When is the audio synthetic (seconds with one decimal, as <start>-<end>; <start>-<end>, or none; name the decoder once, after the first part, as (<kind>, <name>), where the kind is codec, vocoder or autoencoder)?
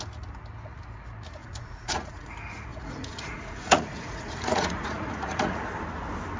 1.4-2.3 (vocoder, Vocos); 2.7-5.6